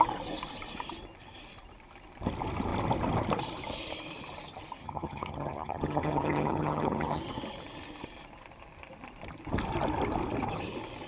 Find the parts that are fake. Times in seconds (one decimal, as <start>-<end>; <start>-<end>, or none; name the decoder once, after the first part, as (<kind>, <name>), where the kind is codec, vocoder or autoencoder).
4.8-7.2 (vocoder, HiFi-GAN)